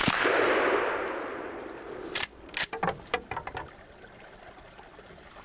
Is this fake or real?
real